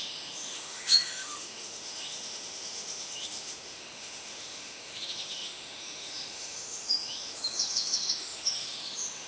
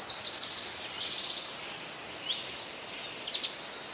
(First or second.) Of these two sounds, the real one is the second